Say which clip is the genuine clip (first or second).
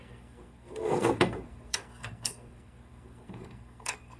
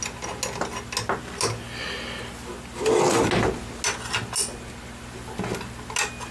second